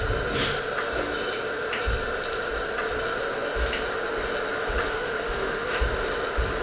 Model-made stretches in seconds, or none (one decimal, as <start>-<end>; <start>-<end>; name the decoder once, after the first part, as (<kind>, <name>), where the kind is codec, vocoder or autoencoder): 4.8-5.8 (autoencoder, DAC-VAE)